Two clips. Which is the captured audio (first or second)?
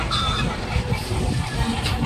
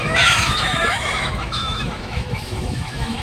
first